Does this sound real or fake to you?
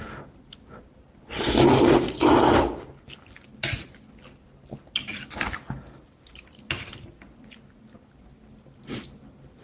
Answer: real